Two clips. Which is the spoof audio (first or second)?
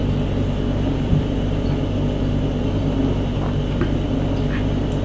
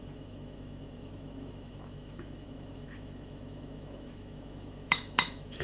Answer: second